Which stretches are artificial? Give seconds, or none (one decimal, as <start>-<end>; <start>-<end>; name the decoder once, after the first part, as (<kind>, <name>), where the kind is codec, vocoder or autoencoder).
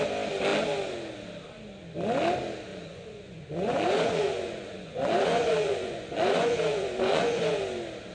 2.7-7.6 (vocoder, Vocos)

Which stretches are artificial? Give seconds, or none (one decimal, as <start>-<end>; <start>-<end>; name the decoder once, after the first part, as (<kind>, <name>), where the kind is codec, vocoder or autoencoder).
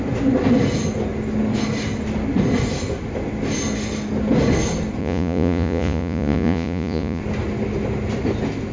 5.0-7.2 (vocoder, Vocos)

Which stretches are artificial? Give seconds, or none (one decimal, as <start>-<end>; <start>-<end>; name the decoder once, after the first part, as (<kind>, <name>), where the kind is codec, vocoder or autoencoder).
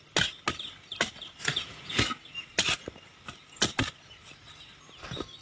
1.4-2.0 (vocoder, Vocos)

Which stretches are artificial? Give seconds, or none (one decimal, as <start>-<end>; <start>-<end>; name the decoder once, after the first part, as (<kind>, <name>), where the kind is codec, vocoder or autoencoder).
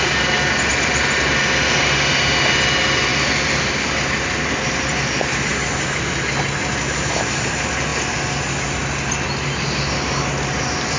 none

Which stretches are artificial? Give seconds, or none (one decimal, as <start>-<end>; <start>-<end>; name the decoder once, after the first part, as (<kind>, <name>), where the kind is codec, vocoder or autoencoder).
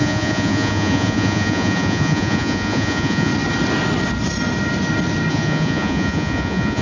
0.0-3.3 (vocoder, Vocos); 5.3-6.8